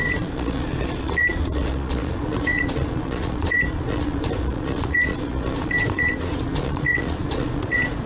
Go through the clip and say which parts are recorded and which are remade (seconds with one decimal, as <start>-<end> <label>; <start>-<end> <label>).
0.0-8.1 remade